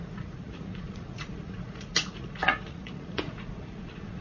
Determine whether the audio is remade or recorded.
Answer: remade